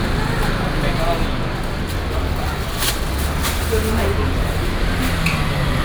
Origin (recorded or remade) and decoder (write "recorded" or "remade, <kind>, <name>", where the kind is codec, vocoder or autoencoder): recorded